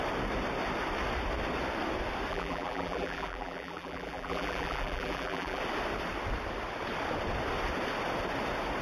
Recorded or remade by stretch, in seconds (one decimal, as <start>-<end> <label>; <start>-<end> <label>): 0.0-2.3 recorded; 2.3-5.6 remade; 5.6-8.8 recorded